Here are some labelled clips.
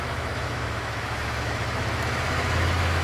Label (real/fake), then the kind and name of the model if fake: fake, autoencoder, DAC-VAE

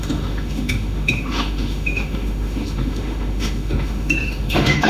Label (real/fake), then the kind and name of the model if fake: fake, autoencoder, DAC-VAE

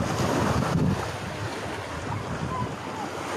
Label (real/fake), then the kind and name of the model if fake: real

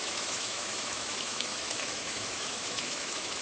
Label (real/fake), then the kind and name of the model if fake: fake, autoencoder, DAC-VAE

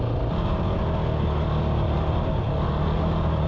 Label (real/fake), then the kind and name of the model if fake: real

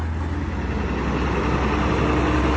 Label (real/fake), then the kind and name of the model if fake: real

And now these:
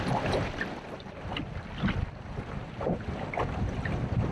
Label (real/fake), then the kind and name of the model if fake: real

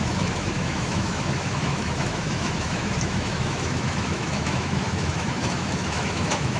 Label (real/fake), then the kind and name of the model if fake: fake, autoencoder, DAC-VAE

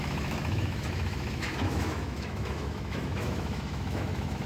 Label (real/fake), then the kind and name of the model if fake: fake, autoencoder, DAC-VAE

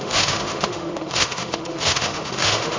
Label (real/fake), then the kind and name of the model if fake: fake, autoencoder, DAC-VAE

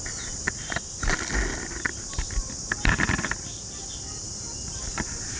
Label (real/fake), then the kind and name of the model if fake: real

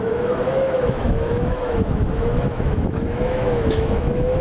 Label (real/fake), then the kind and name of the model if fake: fake, autoencoder, DAC-VAE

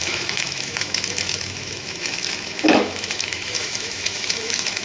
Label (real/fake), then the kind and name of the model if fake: fake, autoencoder, DAC-VAE